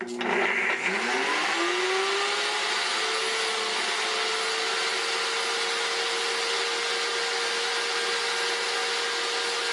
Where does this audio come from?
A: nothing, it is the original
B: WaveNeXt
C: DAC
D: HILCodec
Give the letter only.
A